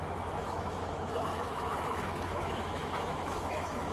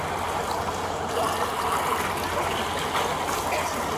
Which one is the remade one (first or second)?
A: first